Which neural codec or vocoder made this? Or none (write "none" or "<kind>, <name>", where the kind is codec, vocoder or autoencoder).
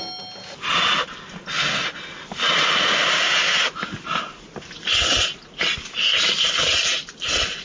none